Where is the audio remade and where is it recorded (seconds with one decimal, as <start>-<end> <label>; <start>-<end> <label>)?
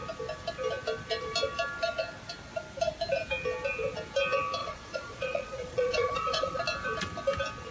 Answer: 0.0-4.6 recorded; 4.6-6.6 remade; 6.6-7.7 recorded